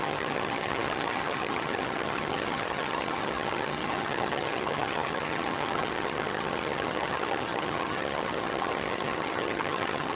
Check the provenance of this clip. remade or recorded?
remade